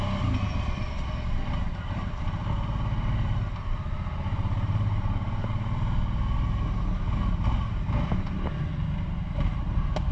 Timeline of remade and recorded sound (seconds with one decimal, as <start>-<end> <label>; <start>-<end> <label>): 0.0-2.4 recorded; 2.4-4.2 remade; 4.2-10.1 recorded